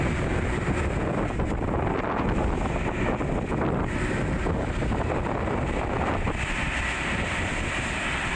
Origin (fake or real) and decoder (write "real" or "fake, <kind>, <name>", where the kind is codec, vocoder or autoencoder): real